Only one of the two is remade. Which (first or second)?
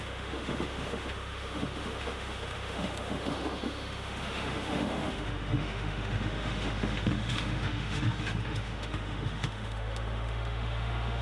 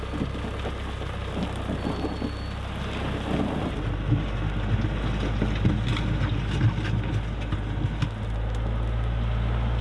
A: first